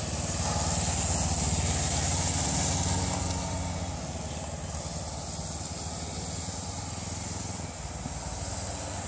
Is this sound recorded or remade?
recorded